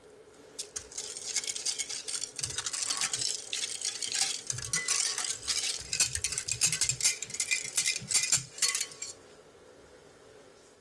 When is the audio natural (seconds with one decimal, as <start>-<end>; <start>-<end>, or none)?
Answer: 0.0-10.8